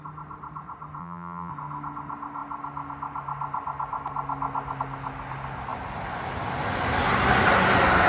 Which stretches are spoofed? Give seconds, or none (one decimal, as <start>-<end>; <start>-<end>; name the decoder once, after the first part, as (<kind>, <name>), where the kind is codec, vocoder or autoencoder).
1.0-1.5 (vocoder, BigVGAN v2)